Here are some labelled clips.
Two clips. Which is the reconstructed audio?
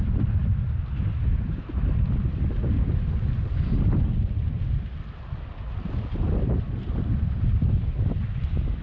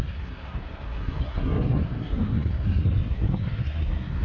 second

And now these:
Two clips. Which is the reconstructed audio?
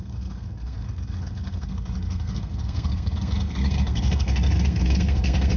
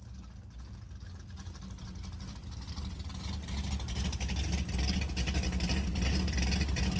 first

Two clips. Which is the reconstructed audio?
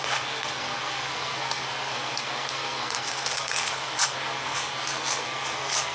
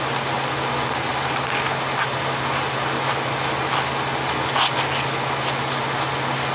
first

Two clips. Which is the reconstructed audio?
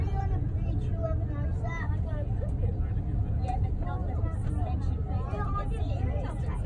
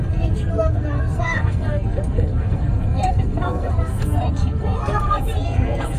second